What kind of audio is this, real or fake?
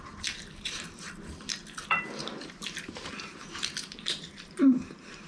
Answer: fake